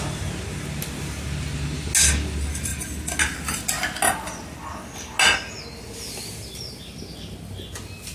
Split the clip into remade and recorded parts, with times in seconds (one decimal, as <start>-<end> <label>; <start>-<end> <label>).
0.0-8.1 recorded